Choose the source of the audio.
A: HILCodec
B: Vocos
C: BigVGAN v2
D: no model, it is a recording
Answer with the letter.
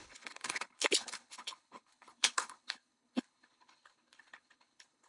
A